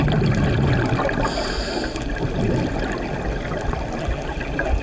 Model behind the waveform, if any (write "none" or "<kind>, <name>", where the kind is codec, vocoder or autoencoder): none